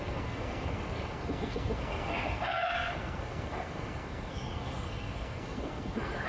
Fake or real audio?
fake